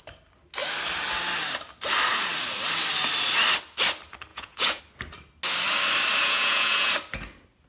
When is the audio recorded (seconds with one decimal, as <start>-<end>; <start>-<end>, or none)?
0.0-4.3; 4.8-6.2; 6.9-7.7